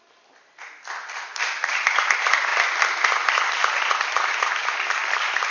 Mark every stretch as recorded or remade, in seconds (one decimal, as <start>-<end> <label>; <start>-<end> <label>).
0.0-5.5 recorded

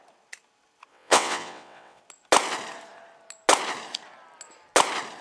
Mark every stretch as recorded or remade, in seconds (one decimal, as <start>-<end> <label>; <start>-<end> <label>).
0.0-0.9 recorded; 0.9-2.0 remade; 2.0-5.2 recorded

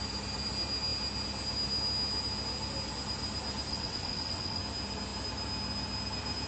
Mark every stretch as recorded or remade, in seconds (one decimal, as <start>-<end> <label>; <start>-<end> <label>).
0.0-3.7 recorded; 3.7-4.6 remade; 4.6-6.5 recorded

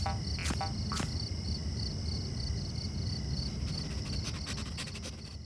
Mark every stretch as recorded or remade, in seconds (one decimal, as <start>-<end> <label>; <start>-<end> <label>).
0.0-5.4 recorded

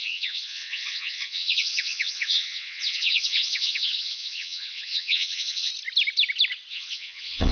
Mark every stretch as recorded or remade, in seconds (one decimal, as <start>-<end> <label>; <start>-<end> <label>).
0.0-5.7 remade; 5.7-6.7 recorded; 6.7-7.5 remade

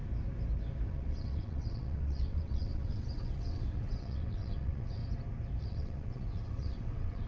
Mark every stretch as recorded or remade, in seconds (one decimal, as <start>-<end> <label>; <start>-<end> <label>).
0.0-0.9 recorded; 0.9-5.0 remade; 5.0-5.6 recorded; 5.6-7.3 remade

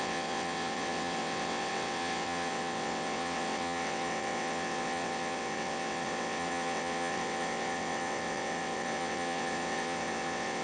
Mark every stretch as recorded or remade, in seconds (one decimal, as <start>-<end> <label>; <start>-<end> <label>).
0.0-10.6 remade